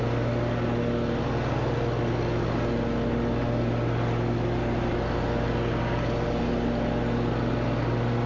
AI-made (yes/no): no